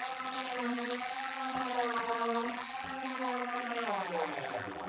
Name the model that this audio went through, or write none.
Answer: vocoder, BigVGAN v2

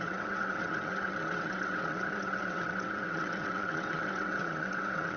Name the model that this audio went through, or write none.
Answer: vocoder, WaveNeXt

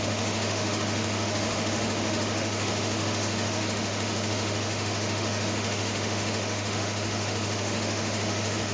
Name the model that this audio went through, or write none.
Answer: autoencoder, DAC-VAE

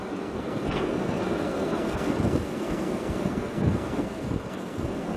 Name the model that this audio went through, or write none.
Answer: codec, SNAC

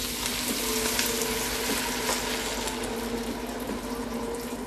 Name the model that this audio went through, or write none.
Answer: none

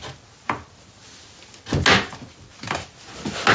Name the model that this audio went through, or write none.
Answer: none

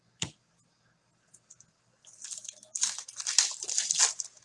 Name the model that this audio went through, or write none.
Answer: none